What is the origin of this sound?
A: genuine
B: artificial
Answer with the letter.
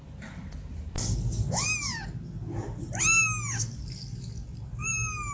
A